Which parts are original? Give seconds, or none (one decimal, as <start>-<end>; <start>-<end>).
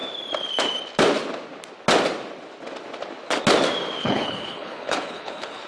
0.0-4.0